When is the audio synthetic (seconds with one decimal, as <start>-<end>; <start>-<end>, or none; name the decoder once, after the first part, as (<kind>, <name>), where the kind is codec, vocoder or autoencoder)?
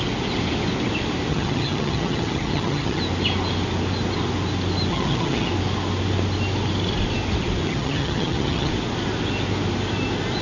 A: 1.3-3.0 (vocoder, HiFi-GAN); 4.9-5.5; 7.6-8.7